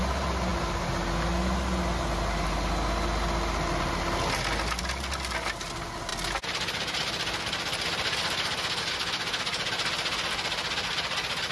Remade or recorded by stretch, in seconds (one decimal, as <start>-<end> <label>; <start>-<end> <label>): 0.0-11.5 recorded

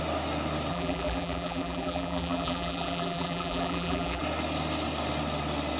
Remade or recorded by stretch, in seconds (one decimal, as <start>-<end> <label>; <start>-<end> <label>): 0.0-0.7 recorded; 0.7-4.2 remade; 4.2-5.8 recorded